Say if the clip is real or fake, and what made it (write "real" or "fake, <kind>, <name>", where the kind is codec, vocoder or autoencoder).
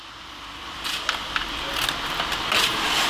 real